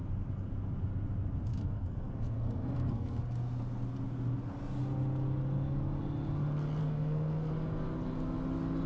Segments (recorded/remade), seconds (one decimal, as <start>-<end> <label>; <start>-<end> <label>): 0.0-1.5 recorded; 1.5-3.2 remade; 3.2-6.8 recorded; 6.8-7.5 remade; 7.5-8.9 recorded